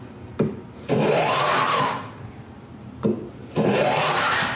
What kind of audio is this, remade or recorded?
remade